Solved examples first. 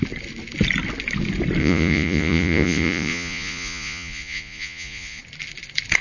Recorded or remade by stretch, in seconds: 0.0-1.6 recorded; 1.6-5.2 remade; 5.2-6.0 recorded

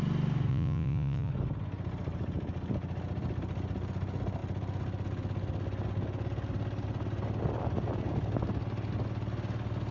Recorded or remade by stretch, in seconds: 0.0-0.5 recorded; 0.5-1.3 remade; 1.3-9.9 recorded

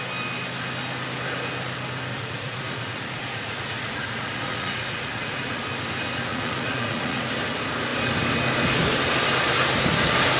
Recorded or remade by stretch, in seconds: 0.0-2.1 recorded; 2.1-5.6 remade; 5.6-6.3 recorded; 6.3-7.2 remade; 7.2-10.4 recorded

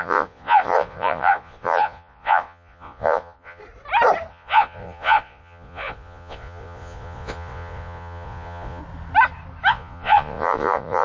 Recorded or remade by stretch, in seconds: 0.0-3.6 remade; 3.6-4.3 recorded; 4.3-8.8 remade; 8.8-9.7 recorded; 9.7-11.0 remade

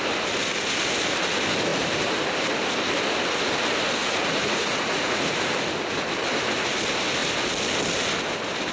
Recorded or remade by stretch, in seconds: 0.0-4.0 recorded; 4.0-5.5 remade; 5.5-8.7 recorded